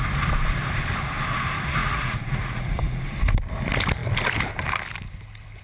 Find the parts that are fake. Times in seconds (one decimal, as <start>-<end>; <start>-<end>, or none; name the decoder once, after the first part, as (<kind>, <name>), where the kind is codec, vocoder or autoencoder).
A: 1.8-3.0 (vocoder, Vocos)